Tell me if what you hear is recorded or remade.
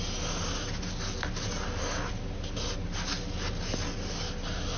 recorded